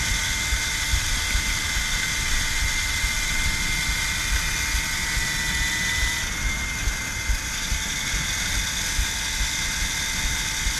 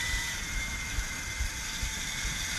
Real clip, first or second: first